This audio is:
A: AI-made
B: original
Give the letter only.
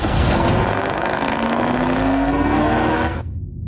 A